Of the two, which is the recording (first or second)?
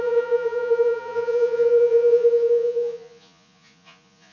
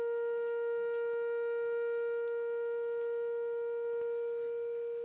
second